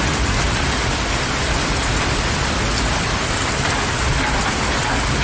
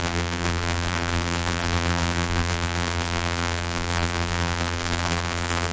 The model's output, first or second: second